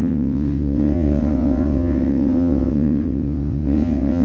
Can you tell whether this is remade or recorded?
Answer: remade